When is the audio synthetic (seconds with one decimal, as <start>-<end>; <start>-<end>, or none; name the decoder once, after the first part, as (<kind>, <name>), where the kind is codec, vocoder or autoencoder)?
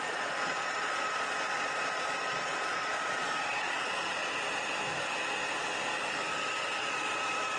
0.0-4.2 (vocoder, Vocos); 6.8-7.6